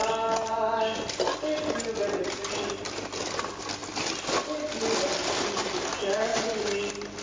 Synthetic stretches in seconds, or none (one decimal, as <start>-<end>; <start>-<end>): 6.3-6.8